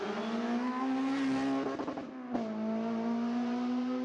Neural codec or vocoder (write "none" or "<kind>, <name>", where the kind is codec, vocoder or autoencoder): none